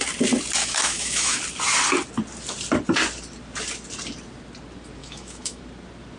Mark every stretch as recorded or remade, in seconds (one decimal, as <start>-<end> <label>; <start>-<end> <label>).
0.0-0.6 recorded; 0.6-1.4 remade; 1.4-5.0 recorded; 5.0-5.6 remade; 5.6-6.2 recorded